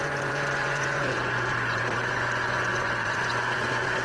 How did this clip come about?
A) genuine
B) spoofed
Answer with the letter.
B